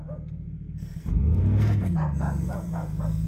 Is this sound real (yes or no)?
no